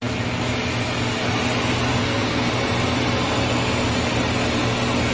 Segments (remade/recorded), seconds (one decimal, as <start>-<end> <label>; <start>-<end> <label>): 0.0-2.0 recorded; 2.0-2.5 remade; 2.5-5.1 recorded